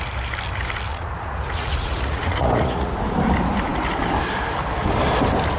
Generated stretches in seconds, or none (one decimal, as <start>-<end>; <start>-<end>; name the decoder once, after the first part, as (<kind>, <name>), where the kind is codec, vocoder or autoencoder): 0.9-2.9 (vocoder, Vocos)